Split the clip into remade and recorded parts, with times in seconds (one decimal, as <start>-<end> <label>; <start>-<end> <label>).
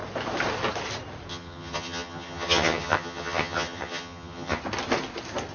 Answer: 0.0-1.3 recorded; 1.3-4.6 remade; 4.6-5.5 recorded